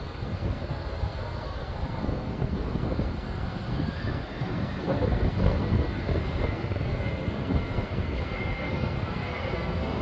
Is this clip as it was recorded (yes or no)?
no